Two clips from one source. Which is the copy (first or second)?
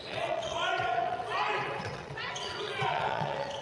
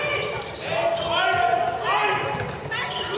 first